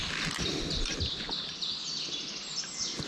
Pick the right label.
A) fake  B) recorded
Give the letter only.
B